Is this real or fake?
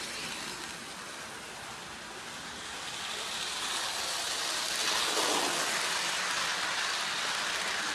real